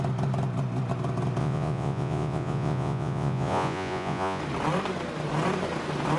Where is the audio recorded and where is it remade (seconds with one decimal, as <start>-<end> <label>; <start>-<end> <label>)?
0.0-1.4 recorded; 1.4-4.4 remade; 4.4-6.2 recorded

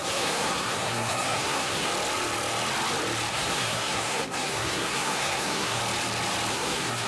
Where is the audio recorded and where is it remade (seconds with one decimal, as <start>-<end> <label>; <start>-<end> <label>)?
0.0-1.9 remade; 1.9-3.3 recorded; 3.3-5.8 remade; 5.8-6.5 recorded; 6.5-7.1 remade

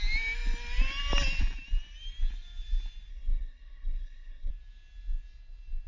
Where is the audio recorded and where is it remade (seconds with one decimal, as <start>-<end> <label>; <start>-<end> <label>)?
0.0-3.1 recorded; 3.1-4.5 remade; 4.5-5.9 recorded

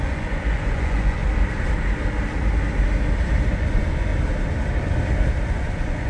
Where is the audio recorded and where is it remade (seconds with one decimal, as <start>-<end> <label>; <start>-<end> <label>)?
0.0-1.2 remade; 1.2-3.5 recorded; 3.5-4.1 remade; 4.1-5.5 recorded; 5.5-6.1 remade